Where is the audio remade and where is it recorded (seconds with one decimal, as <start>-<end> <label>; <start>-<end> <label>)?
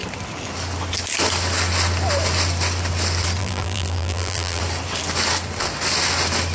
0.0-3.4 recorded; 3.4-4.6 remade; 4.6-6.5 recorded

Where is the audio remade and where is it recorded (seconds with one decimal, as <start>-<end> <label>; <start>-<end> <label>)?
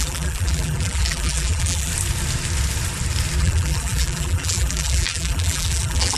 0.0-1.9 remade; 1.9-3.4 recorded; 3.4-6.2 remade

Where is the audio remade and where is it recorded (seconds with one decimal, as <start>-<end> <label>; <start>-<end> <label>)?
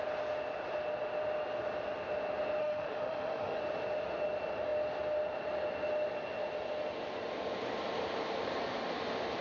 0.0-2.6 recorded; 2.6-3.6 remade; 3.6-9.4 recorded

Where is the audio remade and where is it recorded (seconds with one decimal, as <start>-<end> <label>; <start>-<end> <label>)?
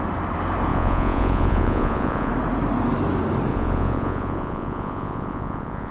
0.0-0.7 recorded; 0.7-2.3 remade; 2.3-3.5 recorded; 3.5-5.9 remade